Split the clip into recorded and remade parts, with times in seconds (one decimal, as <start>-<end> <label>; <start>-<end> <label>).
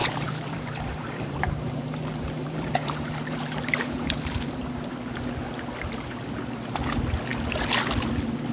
0.0-4.9 remade; 4.9-8.5 recorded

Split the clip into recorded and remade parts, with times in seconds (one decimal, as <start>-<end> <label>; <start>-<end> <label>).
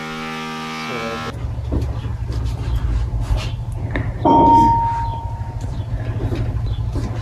0.0-5.1 recorded; 5.1-5.9 remade; 5.9-7.2 recorded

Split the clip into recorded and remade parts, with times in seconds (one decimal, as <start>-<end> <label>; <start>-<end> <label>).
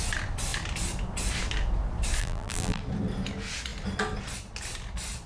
0.0-2.2 recorded; 2.2-2.8 remade; 2.8-5.3 recorded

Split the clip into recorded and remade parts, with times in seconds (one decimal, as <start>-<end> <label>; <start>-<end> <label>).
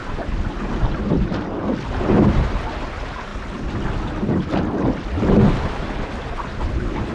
0.0-1.7 remade; 1.7-7.1 recorded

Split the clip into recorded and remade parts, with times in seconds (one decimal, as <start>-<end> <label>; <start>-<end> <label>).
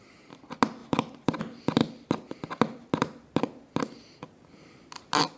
0.0-0.8 recorded; 0.8-1.4 remade; 1.4-5.4 recorded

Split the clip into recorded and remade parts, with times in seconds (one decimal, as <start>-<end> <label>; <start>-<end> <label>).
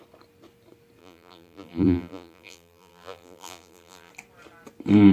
0.0-1.0 recorded; 1.0-4.1 remade; 4.1-5.1 recorded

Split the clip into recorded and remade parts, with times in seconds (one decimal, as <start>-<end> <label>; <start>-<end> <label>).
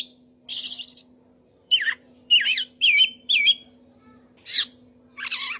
0.0-0.5 recorded; 0.5-3.4 remade; 3.4-5.6 recorded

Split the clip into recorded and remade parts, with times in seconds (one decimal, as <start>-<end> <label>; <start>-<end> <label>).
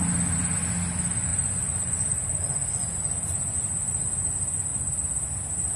0.0-1.3 recorded; 1.3-2.4 remade; 2.4-2.8 recorded; 2.8-4.3 remade; 4.3-5.8 recorded